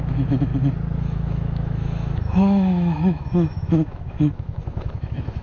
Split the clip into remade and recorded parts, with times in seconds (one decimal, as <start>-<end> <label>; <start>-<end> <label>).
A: 0.0-0.5 remade; 0.5-1.0 recorded; 1.0-5.4 remade